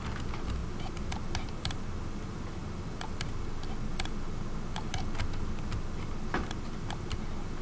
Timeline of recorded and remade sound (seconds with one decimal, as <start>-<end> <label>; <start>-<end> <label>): 0.0-7.6 recorded